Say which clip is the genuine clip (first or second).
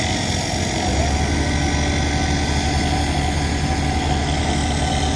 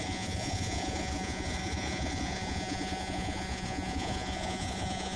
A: first